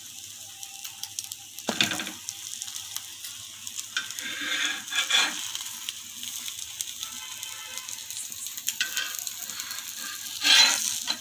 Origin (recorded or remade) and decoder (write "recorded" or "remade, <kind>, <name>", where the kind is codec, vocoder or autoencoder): recorded